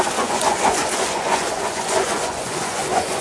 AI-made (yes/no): yes